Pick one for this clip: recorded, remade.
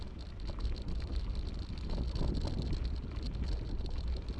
remade